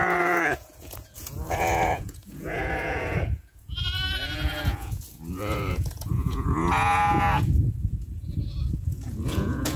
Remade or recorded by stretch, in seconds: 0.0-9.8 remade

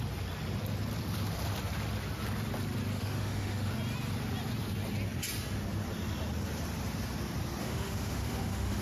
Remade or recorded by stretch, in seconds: 0.0-2.9 recorded; 2.9-3.7 remade; 3.7-7.6 recorded; 7.6-8.8 remade